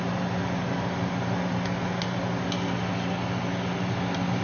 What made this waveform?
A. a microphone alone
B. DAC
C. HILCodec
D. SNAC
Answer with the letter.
A